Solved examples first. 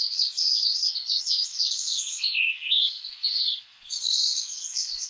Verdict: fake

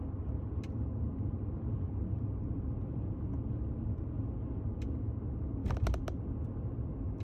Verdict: real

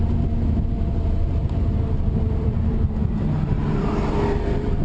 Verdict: fake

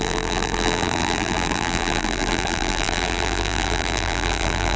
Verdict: fake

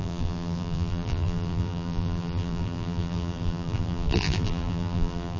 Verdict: fake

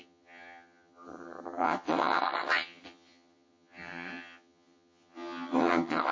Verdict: fake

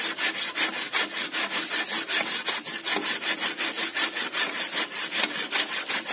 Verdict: real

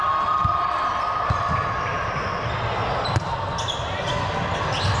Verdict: real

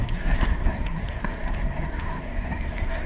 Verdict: fake